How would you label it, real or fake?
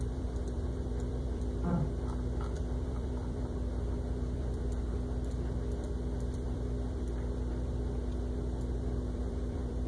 fake